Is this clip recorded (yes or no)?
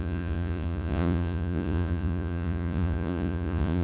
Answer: no